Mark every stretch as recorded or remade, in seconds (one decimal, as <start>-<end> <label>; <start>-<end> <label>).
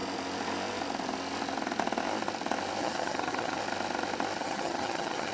0.0-2.8 recorded; 2.8-3.6 remade; 3.6-4.4 recorded; 4.4-5.3 remade